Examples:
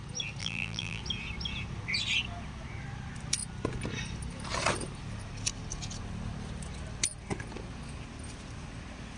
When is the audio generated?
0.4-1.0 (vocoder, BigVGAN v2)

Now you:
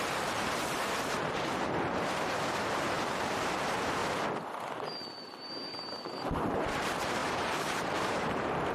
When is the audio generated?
0.0-4.0 (vocoder, BigVGAN v2); 6.5-8.7